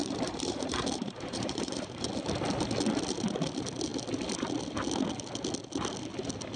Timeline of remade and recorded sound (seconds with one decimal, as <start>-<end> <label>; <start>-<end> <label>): 0.0-2.1 remade; 2.1-6.6 recorded